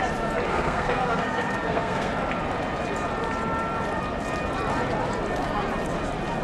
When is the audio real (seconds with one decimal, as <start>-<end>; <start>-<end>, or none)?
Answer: 0.0-0.5; 2.1-6.4